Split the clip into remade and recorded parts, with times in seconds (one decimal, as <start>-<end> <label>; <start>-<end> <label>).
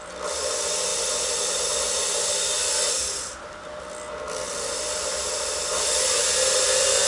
0.0-7.1 recorded